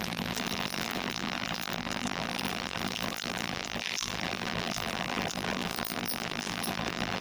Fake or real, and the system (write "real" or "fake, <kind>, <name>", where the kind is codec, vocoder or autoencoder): fake, vocoder, BigVGAN v2